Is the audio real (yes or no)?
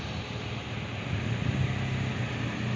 yes